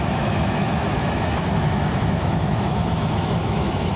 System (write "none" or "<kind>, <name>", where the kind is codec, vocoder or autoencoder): autoencoder, DAC-VAE